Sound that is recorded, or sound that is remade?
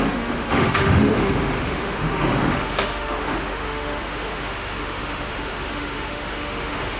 remade